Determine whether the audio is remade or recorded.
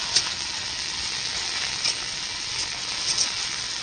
remade